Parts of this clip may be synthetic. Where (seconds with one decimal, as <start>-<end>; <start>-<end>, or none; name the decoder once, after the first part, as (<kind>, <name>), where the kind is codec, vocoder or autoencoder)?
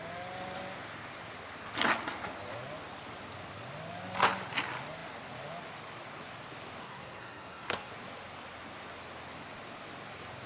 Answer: 6.8-7.9 (codec, SNAC)